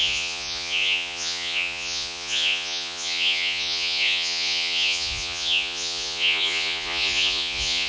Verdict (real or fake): fake